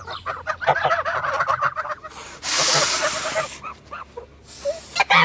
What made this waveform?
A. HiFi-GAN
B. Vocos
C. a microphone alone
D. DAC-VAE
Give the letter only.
C